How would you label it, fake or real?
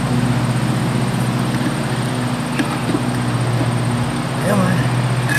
real